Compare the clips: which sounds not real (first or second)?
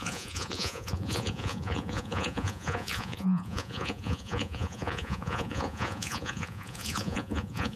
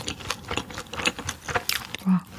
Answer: first